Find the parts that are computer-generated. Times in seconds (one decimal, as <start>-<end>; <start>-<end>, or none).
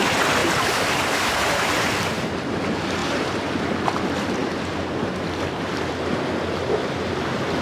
0.4-2.6; 3.0-3.5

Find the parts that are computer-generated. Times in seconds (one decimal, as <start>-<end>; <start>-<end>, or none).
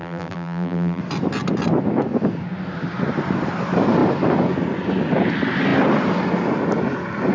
0.0-1.0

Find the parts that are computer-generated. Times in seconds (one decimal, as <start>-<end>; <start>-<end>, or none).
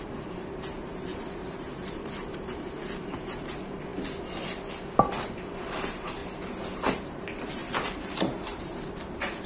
0.0-3.9; 5.3-6.2; 7.0-9.5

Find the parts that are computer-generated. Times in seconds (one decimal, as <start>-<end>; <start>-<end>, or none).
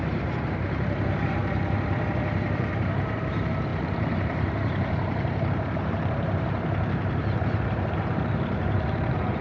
0.0-1.4; 2.2-9.4